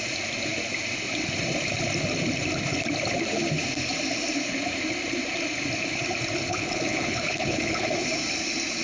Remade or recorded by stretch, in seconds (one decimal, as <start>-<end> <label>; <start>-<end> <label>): 0.0-6.5 recorded; 6.5-7.9 remade; 7.9-8.8 recorded